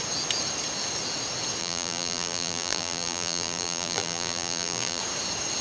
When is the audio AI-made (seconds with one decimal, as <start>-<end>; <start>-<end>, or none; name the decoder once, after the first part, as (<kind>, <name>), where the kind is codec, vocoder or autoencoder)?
1.6-5.0 (vocoder, BigVGAN v2)